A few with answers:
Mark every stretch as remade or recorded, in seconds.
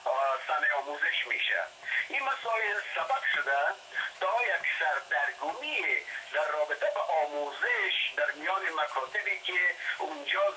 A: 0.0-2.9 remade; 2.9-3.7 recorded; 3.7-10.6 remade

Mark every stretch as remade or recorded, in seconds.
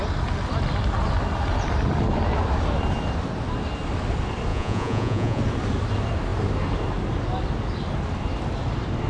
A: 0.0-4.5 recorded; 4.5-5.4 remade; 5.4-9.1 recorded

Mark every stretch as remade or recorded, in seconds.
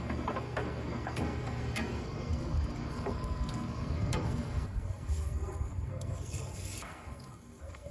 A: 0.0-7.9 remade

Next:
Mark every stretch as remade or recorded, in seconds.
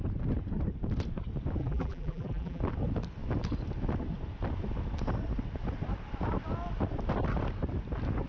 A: 0.0-1.6 recorded; 1.6-2.6 remade; 2.6-8.3 recorded